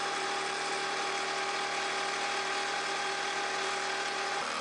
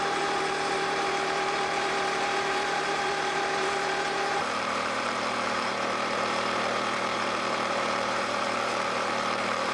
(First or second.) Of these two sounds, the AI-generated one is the second